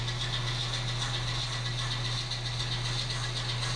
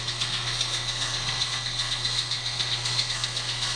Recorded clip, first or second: first